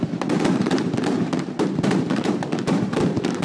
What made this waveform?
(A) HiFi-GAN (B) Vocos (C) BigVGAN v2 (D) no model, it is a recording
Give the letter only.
C